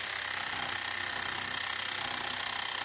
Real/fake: real